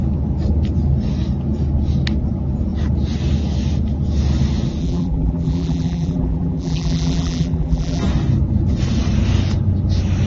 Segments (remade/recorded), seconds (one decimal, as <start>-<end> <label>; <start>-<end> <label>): 0.0-4.8 recorded; 4.8-8.0 remade; 8.0-10.3 recorded